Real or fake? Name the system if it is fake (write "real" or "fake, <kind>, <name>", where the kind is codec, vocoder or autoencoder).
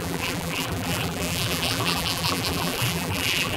fake, vocoder, BigVGAN v2